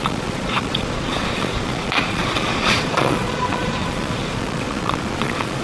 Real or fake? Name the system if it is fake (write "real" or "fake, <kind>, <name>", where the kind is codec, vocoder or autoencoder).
fake, vocoder, Vocos